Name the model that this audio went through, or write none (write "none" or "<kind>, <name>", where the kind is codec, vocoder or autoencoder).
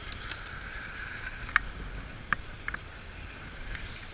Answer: none